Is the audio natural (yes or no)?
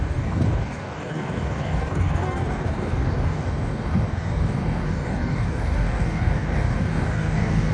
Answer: no